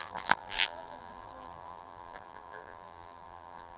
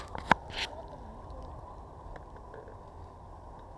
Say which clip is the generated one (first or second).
first